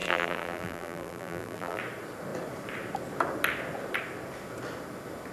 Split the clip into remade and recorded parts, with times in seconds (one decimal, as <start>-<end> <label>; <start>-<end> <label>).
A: 0.0-1.8 remade; 1.8-5.3 recorded